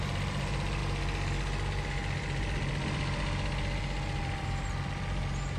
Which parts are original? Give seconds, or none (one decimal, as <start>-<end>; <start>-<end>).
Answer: 0.0-5.6